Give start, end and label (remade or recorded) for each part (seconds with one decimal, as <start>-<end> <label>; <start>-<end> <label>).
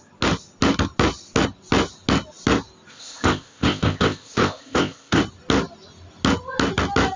0.0-2.9 recorded; 2.9-5.2 remade; 5.2-7.2 recorded